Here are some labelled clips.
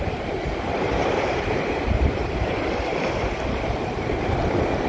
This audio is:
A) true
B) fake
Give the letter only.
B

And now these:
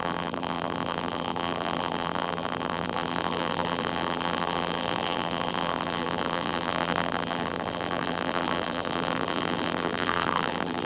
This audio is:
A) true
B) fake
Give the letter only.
B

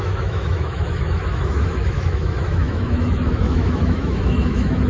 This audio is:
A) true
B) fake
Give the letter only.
B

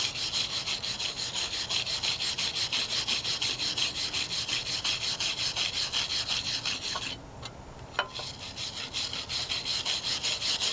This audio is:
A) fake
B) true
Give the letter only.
B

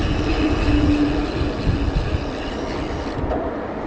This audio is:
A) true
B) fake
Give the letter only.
B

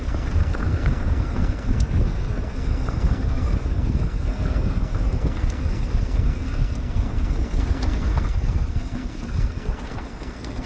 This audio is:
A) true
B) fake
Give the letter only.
B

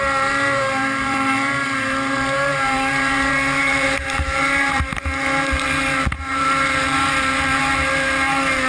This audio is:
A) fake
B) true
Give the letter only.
A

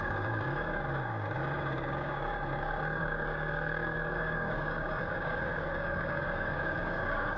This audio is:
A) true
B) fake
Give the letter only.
B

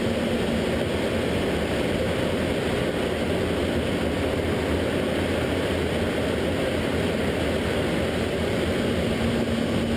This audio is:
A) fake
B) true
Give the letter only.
B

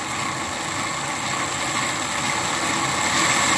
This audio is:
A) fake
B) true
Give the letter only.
B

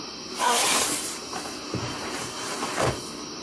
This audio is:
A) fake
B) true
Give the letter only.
B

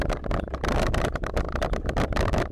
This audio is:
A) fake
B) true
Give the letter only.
B